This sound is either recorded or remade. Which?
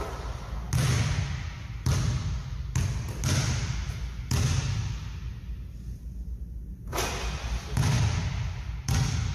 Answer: recorded